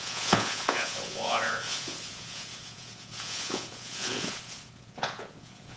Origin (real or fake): fake